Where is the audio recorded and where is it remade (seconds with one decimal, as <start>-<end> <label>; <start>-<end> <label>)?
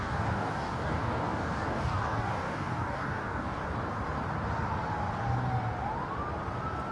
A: 0.0-3.6 remade; 3.6-6.9 recorded